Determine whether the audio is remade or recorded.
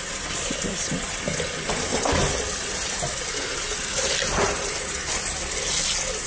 recorded